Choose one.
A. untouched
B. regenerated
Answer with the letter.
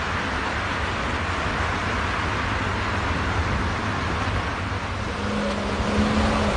A